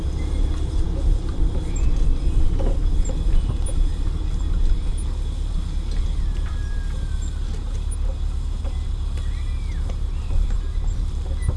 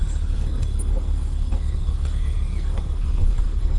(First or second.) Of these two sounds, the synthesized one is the second